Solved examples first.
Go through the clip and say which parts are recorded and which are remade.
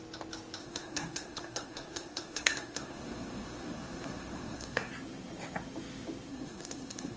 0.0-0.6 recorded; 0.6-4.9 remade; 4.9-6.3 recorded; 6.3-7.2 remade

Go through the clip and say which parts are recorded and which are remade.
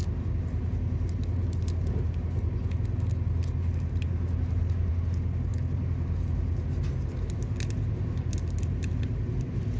0.0-9.8 recorded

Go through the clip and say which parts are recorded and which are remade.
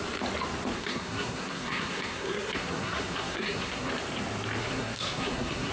0.0-0.7 recorded; 0.7-3.9 remade; 3.9-4.6 recorded; 4.6-5.7 remade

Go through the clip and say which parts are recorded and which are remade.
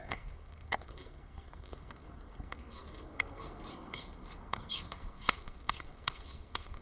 0.0-6.8 remade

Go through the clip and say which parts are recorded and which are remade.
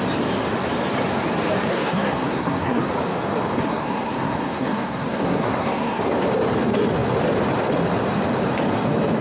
0.0-1.7 recorded; 1.7-2.9 remade; 2.9-3.6 recorded; 3.6-6.0 remade; 6.0-9.2 recorded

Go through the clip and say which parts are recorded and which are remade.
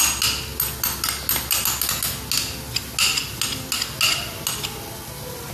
0.0-5.5 recorded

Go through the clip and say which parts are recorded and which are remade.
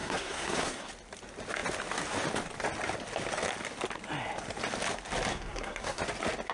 0.0-0.9 remade; 0.9-5.3 recorded; 5.3-6.0 remade; 6.0-6.5 recorded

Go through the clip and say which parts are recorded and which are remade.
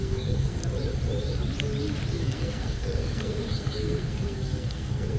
0.0-0.6 remade; 0.6-2.2 recorded; 2.2-5.2 remade